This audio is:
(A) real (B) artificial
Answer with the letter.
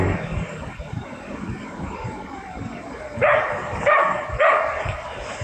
B